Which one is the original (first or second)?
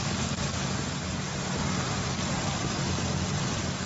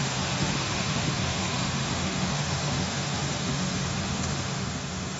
first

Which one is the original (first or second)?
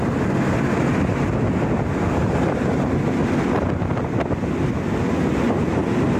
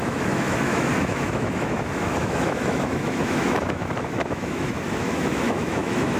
first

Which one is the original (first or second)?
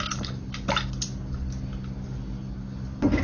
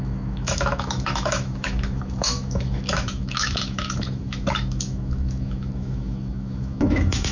first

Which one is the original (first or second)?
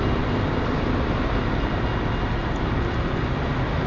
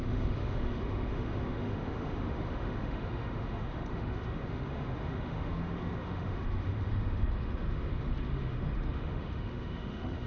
first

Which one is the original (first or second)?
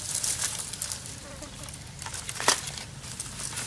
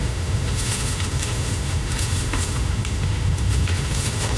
first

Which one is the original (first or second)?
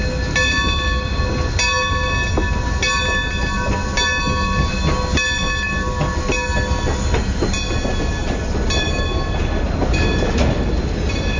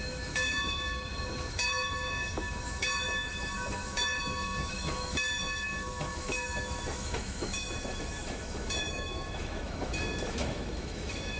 first